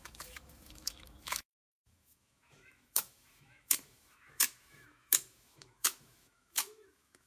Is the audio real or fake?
fake